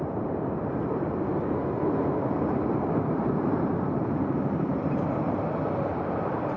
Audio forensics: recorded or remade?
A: remade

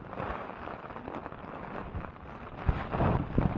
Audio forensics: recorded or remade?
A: remade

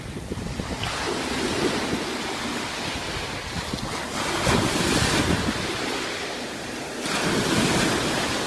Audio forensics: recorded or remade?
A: recorded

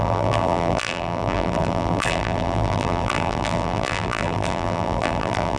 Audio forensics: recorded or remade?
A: remade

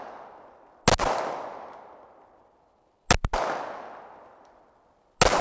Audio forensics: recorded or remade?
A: recorded